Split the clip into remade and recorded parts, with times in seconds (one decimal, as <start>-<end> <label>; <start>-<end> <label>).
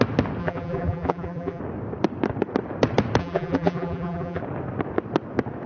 0.0-0.4 recorded; 0.4-1.6 remade; 1.6-3.2 recorded; 3.2-4.4 remade; 4.4-5.7 recorded